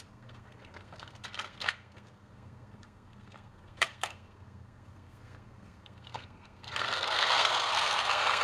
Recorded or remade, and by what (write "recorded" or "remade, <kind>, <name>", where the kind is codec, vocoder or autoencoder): remade, codec, SNAC